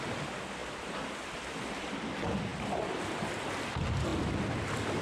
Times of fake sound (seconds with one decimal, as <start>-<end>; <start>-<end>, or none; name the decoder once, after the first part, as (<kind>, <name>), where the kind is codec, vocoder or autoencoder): 0.6-2.1 (vocoder, BigVGAN v2); 2.5-3.5